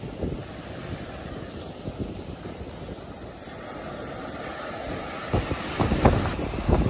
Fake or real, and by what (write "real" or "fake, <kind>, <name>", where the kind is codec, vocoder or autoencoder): real